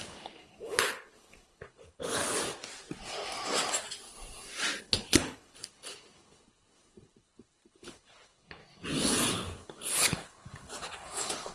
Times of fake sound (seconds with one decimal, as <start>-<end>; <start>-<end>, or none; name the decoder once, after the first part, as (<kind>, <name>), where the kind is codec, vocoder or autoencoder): 0.0-2.2 (codec, HILCodec); 4.8-8.6; 9.3-11.5